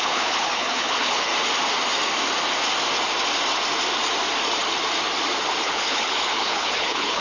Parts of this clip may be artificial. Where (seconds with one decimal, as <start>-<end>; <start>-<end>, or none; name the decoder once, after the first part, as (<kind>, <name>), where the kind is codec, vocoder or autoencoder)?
0.0-1.3 (codec, HILCodec); 5.6-7.2